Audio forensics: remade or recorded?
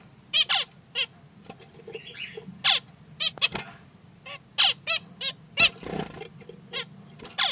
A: recorded